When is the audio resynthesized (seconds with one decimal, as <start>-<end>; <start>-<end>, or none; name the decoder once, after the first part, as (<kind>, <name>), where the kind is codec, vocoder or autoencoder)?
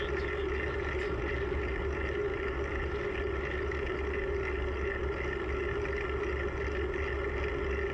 none